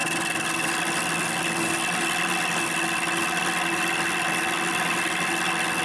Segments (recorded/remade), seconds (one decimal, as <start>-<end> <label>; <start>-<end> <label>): 0.0-5.8 recorded